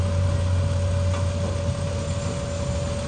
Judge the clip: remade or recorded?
recorded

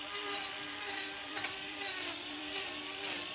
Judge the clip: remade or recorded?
remade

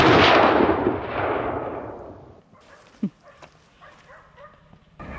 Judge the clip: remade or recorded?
recorded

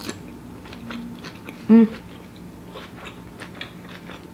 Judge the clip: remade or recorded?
recorded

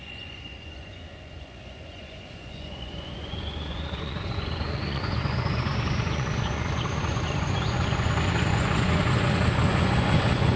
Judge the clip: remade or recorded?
remade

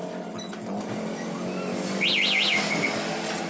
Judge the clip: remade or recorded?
recorded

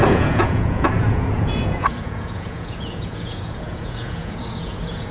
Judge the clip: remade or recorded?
remade